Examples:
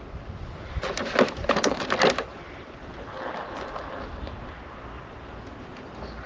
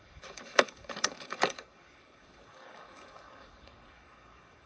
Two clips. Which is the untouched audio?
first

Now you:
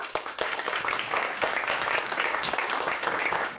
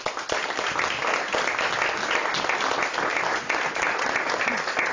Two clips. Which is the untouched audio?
second